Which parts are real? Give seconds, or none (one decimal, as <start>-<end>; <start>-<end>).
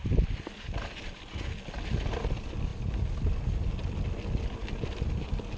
0.0-5.6